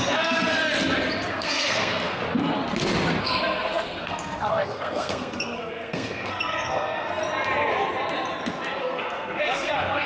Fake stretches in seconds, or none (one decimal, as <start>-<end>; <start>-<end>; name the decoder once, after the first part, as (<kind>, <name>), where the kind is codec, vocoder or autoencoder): 0.0-0.6 (codec, SNAC); 1.3-2.2; 3.2-7.2; 8.8-10.1